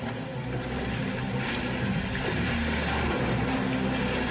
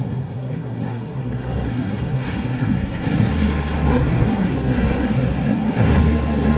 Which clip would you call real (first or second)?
first